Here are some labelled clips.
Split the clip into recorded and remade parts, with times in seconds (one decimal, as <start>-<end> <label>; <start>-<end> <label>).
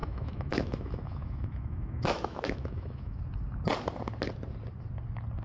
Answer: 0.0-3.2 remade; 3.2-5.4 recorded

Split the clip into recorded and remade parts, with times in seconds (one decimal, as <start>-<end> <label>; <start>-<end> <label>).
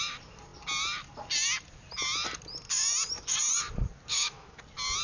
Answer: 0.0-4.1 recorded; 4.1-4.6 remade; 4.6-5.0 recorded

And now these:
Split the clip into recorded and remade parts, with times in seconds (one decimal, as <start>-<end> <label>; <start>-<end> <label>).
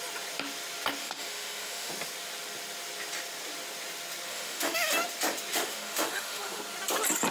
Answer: 0.0-1.0 recorded; 1.0-1.9 remade; 1.9-4.3 recorded; 4.3-4.9 remade; 4.9-5.5 recorded; 5.5-6.6 remade; 6.6-7.3 recorded